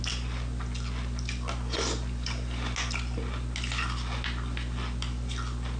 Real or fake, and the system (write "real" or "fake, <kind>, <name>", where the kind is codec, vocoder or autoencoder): real